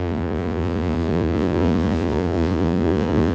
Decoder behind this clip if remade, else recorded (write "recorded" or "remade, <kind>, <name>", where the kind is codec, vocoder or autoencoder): remade, vocoder, Vocos